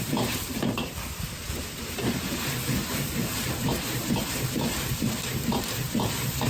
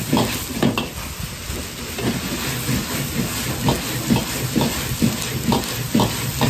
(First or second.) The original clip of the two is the second